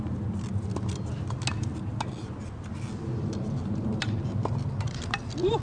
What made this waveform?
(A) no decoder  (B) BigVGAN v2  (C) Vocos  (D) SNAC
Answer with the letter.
A